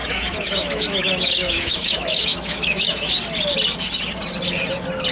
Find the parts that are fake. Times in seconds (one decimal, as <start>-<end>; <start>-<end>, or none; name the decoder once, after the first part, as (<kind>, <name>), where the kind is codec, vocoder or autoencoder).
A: 0.0-3.1 (autoencoder, DAC-VAE)